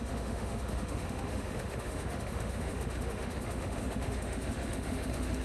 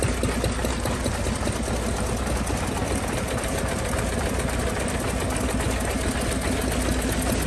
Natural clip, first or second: second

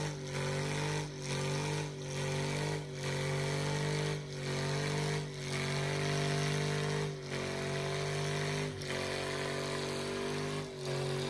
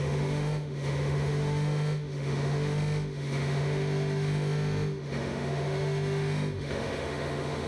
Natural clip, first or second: first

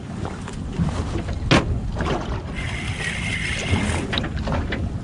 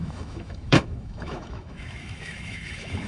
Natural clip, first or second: first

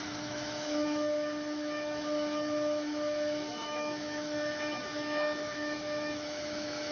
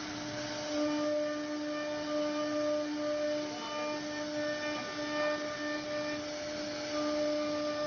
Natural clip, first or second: second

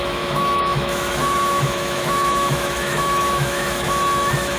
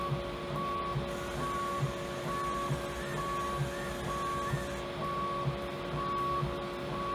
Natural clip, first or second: second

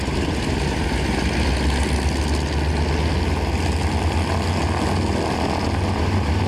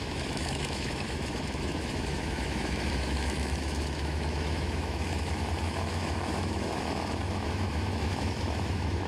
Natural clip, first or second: first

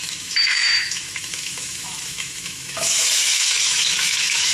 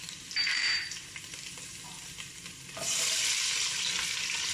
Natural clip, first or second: second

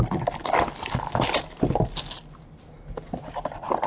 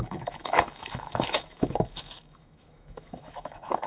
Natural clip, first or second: first